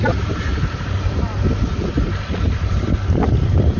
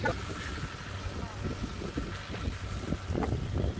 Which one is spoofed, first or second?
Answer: first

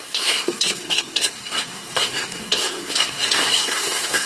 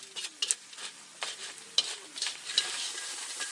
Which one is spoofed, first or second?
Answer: first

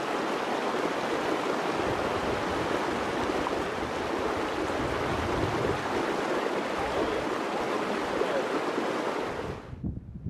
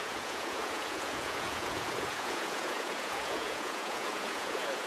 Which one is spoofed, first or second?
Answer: second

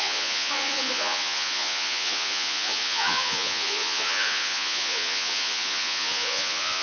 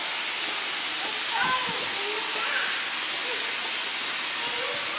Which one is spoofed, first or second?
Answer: first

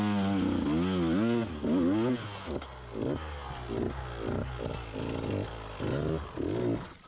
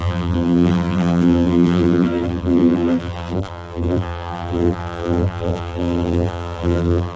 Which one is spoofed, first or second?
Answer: second